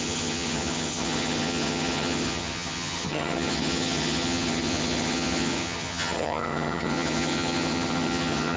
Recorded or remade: remade